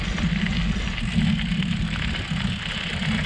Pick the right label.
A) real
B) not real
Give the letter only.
A